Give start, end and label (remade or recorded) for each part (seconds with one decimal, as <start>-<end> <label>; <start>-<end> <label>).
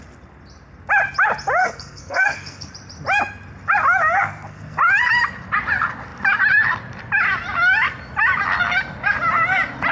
0.0-1.6 recorded; 1.6-2.7 remade; 2.7-4.2 recorded; 4.2-4.8 remade; 4.8-9.9 recorded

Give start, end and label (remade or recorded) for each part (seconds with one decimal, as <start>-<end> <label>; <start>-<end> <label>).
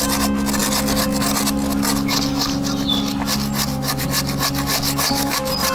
0.0-5.7 recorded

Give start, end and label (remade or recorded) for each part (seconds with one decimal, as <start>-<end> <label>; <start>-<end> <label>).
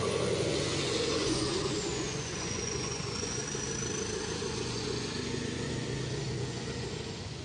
0.0-3.4 remade; 3.4-4.4 recorded; 4.4-7.4 remade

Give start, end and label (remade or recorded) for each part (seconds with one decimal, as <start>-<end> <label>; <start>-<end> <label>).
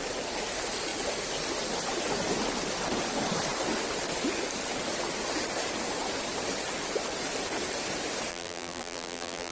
0.0-8.3 recorded; 8.3-9.5 remade